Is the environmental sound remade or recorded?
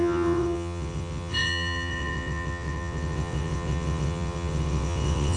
remade